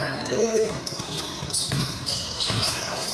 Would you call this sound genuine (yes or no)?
no